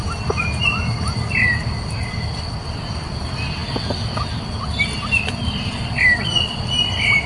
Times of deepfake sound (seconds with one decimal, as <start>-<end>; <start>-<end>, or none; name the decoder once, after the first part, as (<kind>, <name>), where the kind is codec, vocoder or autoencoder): none